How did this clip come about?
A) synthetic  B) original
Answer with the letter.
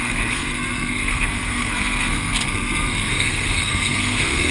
A